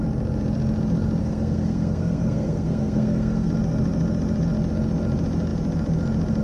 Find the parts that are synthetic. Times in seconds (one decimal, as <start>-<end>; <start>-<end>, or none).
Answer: 1.2-3.5